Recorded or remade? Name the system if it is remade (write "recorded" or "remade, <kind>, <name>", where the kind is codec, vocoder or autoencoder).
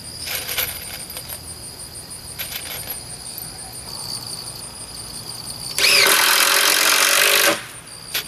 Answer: recorded